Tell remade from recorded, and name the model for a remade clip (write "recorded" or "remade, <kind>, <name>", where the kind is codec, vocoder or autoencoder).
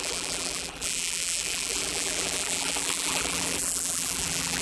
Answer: remade, vocoder, BigVGAN v2